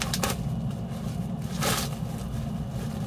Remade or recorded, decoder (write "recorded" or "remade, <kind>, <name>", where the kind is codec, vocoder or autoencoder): recorded